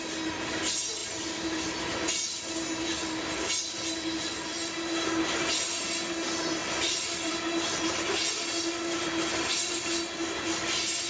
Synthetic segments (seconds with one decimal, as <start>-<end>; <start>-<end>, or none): 6.6-7.3

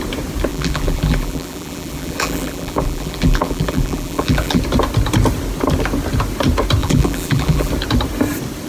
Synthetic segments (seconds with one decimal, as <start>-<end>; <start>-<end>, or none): 0.5-4.6; 6.8-7.7

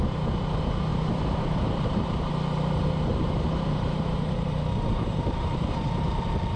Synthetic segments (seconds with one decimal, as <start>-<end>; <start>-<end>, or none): 0.9-2.3; 3.1-6.0

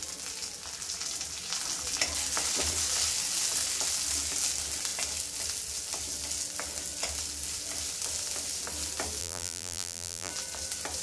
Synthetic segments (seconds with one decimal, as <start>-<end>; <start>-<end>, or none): 9.2-10.3

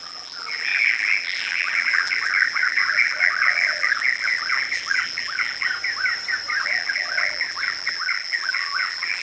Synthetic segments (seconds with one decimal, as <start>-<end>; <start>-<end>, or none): 0.0-5.7; 6.6-9.2